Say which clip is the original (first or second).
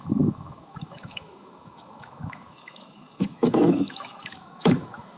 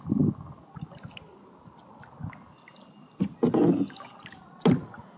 second